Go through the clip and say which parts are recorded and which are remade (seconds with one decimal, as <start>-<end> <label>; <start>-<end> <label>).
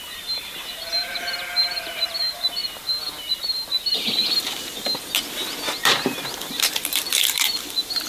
0.0-4.9 remade; 4.9-5.8 recorded; 5.8-8.1 remade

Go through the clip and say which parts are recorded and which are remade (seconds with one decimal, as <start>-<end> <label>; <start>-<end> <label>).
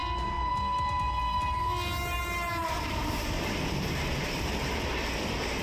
0.0-2.6 recorded; 2.6-4.9 remade; 4.9-5.6 recorded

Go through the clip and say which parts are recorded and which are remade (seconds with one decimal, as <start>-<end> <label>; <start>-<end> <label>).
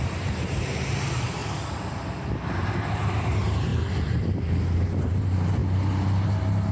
0.0-1.4 remade; 1.4-2.3 recorded; 2.3-5.6 remade; 5.6-6.7 recorded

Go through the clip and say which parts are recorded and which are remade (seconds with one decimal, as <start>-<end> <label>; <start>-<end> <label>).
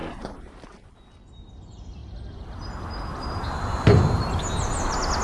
0.0-1.0 remade; 1.0-2.0 recorded; 2.0-2.6 remade; 2.6-3.1 recorded; 3.1-4.1 remade; 4.1-5.2 recorded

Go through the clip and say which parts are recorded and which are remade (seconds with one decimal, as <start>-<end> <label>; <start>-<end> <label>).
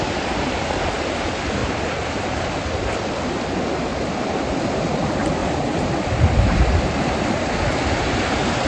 0.0-1.6 recorded; 1.6-2.9 remade; 2.9-3.9 recorded; 3.9-4.9 remade; 4.9-5.4 recorded; 5.4-5.9 remade; 5.9-8.7 recorded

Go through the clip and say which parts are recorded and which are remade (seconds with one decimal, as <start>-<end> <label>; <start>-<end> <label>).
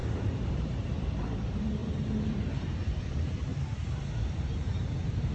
0.0-0.5 recorded; 0.5-3.5 remade; 3.5-4.6 recorded; 4.6-5.3 remade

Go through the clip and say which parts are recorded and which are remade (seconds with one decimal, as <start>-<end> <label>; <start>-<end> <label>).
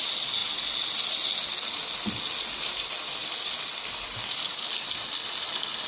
0.0-5.9 recorded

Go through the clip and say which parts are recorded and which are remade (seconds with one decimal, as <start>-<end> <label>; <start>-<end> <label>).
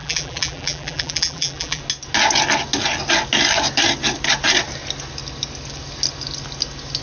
0.0-1.8 remade; 1.8-7.0 recorded